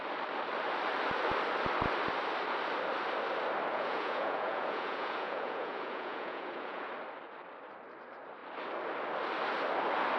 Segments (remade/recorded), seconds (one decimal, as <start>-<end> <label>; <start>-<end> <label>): 0.0-3.7 recorded; 3.7-6.9 remade; 6.9-10.2 recorded